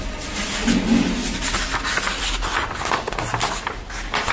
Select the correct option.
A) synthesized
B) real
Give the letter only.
B